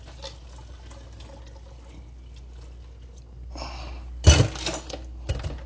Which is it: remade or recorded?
recorded